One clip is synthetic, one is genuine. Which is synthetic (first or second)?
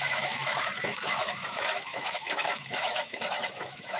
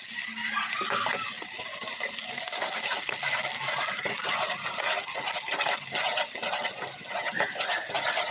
first